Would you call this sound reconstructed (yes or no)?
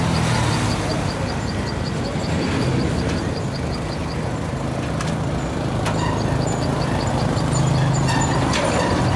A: no